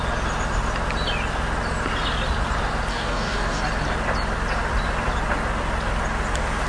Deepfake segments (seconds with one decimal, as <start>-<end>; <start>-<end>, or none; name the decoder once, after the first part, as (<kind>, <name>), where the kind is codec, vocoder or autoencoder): 2.9-3.6 (codec, DAC)